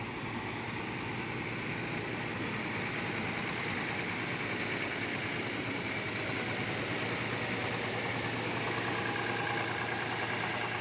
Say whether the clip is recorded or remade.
recorded